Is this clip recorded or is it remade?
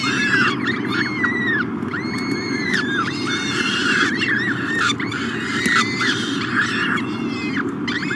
recorded